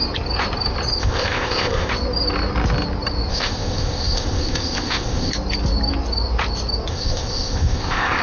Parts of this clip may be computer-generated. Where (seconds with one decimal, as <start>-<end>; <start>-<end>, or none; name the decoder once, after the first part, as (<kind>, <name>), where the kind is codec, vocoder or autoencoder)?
1.0-1.9 (codec, ZipCodec); 3.3-5.3; 6.9-8.2